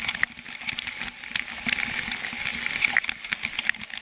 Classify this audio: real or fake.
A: real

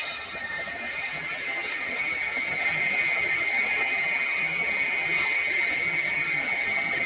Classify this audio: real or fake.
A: fake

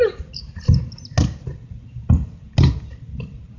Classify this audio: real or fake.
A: real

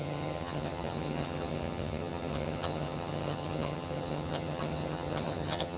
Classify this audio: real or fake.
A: fake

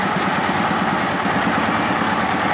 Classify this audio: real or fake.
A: real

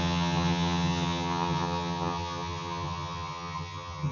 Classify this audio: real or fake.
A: fake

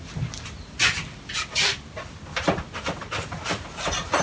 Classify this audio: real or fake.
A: real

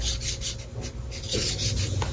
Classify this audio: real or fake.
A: real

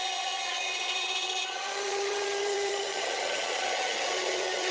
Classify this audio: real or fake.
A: fake